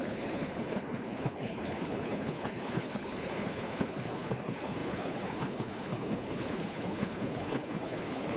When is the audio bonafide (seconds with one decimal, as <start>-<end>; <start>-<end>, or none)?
none